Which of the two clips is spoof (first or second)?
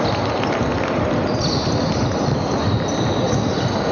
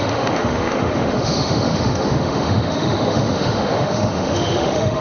second